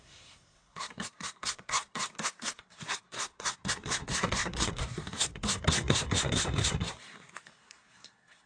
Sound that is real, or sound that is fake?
fake